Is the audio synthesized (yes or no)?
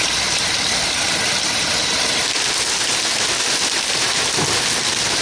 no